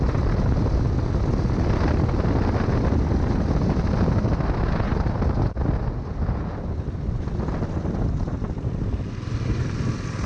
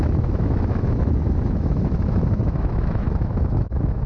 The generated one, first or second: second